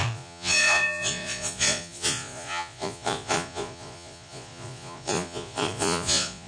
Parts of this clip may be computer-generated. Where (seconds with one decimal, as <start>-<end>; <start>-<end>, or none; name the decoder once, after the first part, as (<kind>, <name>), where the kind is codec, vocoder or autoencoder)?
0.0-6.5 (vocoder, Vocos)